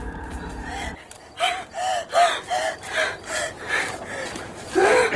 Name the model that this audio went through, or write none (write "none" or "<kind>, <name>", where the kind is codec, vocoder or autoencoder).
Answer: vocoder, BigVGAN v2